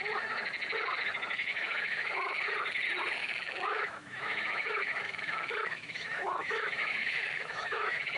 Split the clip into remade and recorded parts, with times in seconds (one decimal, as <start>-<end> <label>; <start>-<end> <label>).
0.0-1.5 recorded; 1.5-2.4 remade; 2.4-3.2 recorded; 3.2-8.2 remade

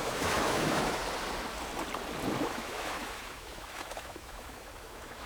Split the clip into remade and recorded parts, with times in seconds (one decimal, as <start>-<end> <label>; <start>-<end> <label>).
0.0-1.0 remade; 1.0-2.4 recorded; 2.4-5.3 remade